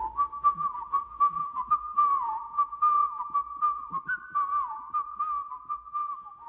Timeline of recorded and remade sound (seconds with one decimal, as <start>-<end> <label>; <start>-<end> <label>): 0.0-1.0 recorded; 1.0-2.1 remade; 2.1-6.5 recorded